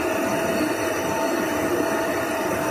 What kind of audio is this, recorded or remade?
recorded